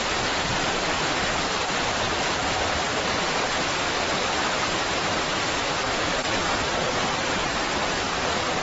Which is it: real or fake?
fake